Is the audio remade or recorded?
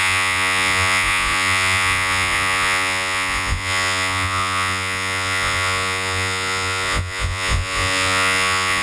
remade